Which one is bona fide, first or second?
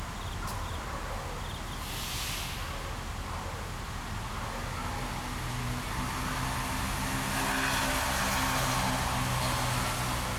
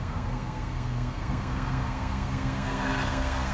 first